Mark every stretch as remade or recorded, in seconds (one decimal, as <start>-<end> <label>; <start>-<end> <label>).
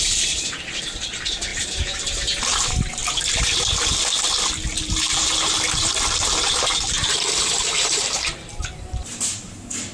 0.0-3.0 remade; 3.0-4.7 recorded; 4.7-9.9 remade